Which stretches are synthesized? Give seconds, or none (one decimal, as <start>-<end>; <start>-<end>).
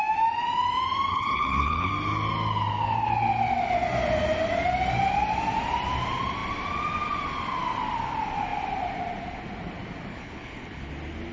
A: 1.1-1.9; 10.1-10.9